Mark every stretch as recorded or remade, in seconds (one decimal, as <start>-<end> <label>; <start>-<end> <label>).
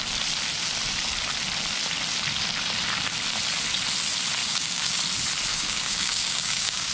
0.0-4.4 recorded; 4.4-5.0 remade; 5.0-5.5 recorded; 5.5-6.9 remade